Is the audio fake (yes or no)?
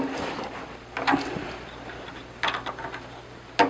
no